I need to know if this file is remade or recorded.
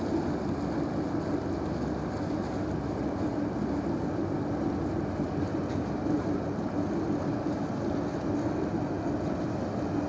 recorded